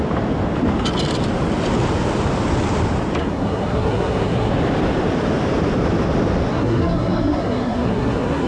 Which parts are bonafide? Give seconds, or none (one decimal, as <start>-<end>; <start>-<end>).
0.0-3.2; 4.5-6.5